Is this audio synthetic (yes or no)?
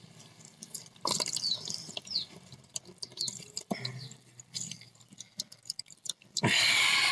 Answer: yes